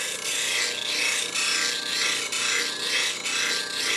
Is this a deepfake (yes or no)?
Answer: no